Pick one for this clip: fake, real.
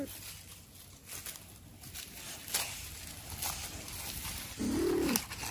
real